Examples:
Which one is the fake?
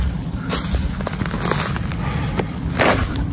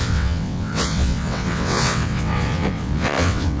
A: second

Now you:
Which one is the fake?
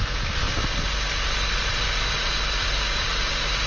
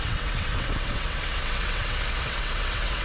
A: second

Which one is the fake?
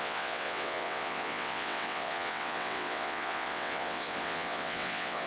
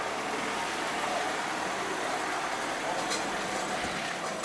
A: first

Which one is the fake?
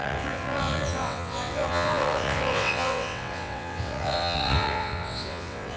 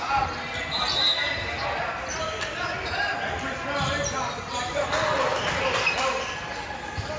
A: first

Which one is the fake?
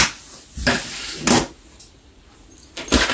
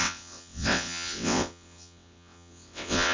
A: second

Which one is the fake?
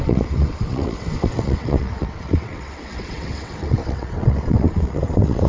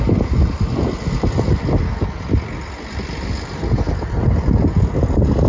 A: first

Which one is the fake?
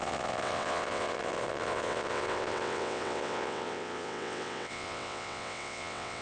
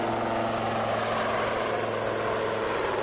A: first